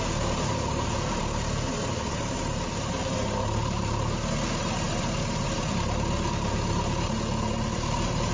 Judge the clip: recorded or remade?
remade